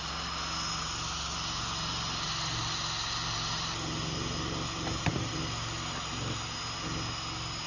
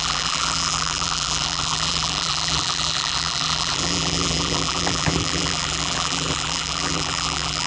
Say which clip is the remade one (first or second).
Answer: second